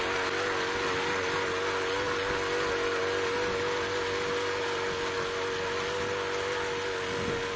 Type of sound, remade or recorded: recorded